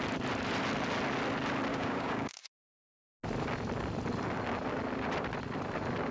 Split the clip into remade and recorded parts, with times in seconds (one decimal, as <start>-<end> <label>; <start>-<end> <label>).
0.0-1.7 recorded; 1.7-2.7 remade; 2.7-6.1 recorded